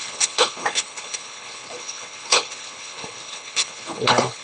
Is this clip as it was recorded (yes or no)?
no